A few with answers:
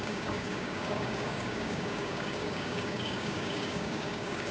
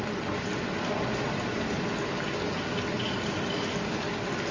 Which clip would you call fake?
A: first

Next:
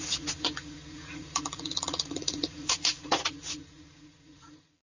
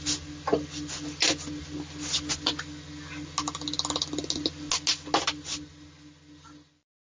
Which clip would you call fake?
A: first